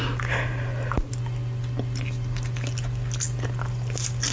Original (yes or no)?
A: yes